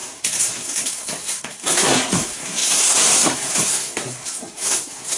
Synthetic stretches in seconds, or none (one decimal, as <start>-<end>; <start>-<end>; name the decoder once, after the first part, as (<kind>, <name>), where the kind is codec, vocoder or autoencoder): 0.0-5.2 (codec, SNAC)